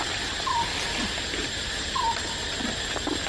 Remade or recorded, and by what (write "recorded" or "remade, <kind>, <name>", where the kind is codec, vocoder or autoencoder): recorded